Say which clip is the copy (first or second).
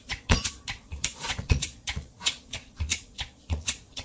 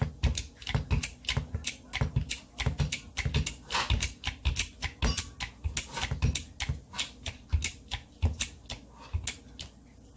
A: first